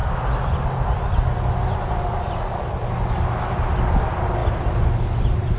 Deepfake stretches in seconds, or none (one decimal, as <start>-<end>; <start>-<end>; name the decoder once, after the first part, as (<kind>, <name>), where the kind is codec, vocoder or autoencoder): none